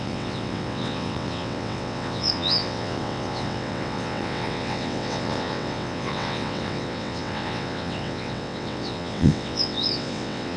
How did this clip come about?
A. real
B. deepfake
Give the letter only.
B